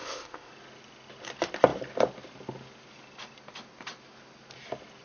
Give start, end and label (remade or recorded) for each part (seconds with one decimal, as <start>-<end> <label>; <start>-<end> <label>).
0.0-0.5 remade; 0.5-5.0 recorded